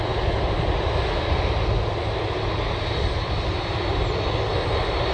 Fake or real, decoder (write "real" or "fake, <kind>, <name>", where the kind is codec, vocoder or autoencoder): real